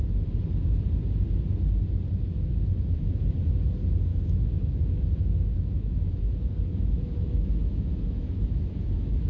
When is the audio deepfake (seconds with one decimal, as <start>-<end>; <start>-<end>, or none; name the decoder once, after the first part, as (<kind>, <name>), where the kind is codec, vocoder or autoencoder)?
2.3-3.0 (autoencoder, DAC-VAE); 4.1-9.3